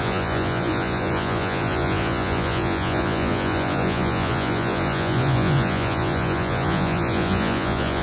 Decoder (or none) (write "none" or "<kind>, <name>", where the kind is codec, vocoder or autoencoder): vocoder, Vocos